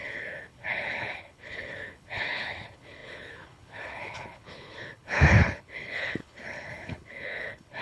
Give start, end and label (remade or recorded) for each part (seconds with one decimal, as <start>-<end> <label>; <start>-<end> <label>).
0.0-7.8 remade

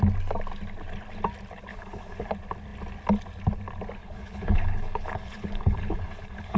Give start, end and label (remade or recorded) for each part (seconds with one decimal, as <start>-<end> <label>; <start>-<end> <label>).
0.0-1.7 recorded; 1.7-2.3 remade; 2.3-4.0 recorded; 4.0-6.6 remade

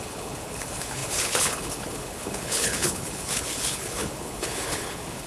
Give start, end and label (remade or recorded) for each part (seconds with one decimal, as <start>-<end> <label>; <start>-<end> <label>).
0.0-5.3 remade

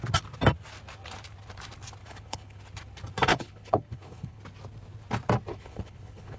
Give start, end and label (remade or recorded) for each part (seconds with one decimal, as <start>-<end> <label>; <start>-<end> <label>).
0.0-2.0 recorded; 2.0-2.6 remade; 2.6-3.3 recorded; 3.3-4.4 remade; 4.4-5.5 recorded; 5.5-6.4 remade

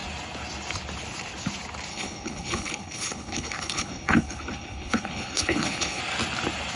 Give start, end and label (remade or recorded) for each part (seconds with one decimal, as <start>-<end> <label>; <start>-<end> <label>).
0.0-1.9 recorded; 1.9-6.0 remade; 6.0-6.8 recorded

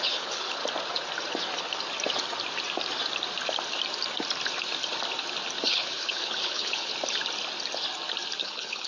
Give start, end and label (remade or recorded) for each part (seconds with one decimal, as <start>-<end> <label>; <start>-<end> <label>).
0.0-0.6 remade; 0.6-5.7 recorded; 5.7-6.9 remade; 6.9-8.4 recorded; 8.4-8.9 remade

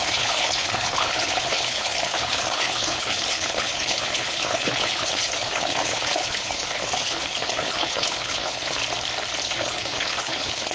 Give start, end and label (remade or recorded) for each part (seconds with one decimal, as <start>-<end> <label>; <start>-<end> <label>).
0.0-8.8 remade; 8.8-9.4 recorded; 9.4-10.7 remade